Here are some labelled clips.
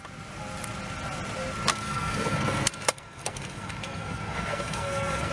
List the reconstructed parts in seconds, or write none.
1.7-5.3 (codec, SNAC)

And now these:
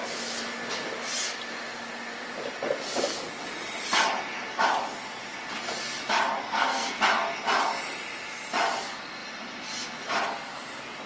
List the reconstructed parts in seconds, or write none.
6.4-7.0 (codec, SNAC)

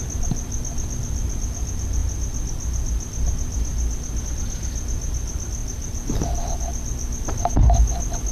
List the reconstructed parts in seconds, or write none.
none

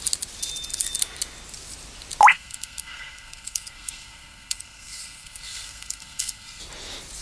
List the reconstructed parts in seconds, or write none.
2.3-6.6 (codec, SNAC)

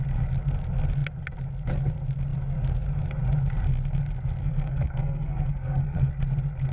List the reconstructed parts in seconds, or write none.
4.4-6.1 (codec, SNAC)

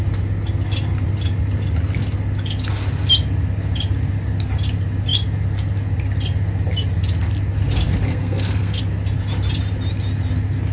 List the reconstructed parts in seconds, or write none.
8.1-8.8 (codec, SNAC)

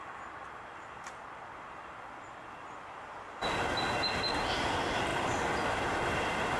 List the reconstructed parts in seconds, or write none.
none

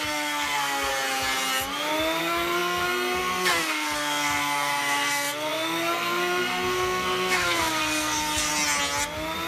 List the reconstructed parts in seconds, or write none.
0.0-0.9 (codec, SNAC); 2.2-8.5